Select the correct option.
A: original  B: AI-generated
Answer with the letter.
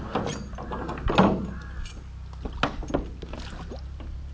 A